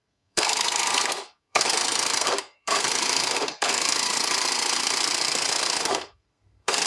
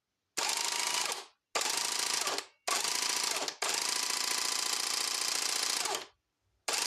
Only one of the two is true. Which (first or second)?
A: second